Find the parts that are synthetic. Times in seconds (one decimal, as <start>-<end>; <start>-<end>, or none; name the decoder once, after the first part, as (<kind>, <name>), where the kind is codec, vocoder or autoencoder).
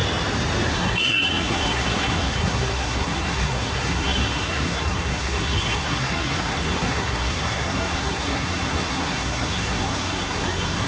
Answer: 0.7-10.9 (codec, SNAC)